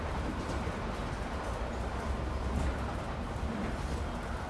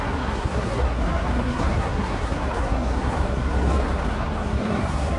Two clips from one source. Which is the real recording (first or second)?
first